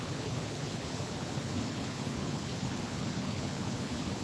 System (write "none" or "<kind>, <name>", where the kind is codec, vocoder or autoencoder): codec, HILCodec